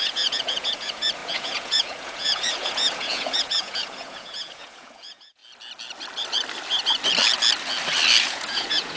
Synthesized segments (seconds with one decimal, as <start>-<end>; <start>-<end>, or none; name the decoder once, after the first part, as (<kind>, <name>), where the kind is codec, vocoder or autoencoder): 0.0-5.4 (vocoder, Vocos); 8.2-9.0